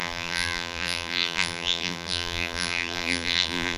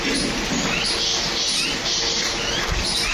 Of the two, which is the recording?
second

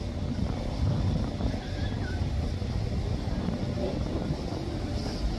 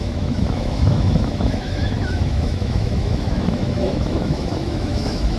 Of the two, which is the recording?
first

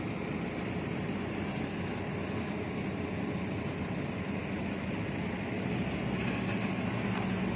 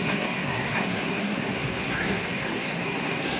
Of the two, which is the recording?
first